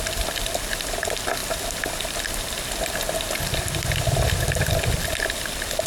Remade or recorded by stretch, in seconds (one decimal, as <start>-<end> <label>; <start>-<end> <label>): 0.0-5.9 recorded